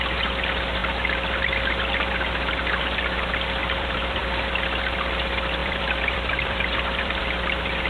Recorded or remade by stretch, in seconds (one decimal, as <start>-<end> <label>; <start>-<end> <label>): 0.0-3.6 recorded; 3.6-4.2 remade; 4.2-5.6 recorded; 5.6-7.2 remade; 7.2-7.9 recorded